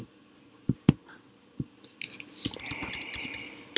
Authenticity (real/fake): real